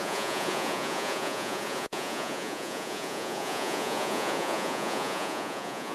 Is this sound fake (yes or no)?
yes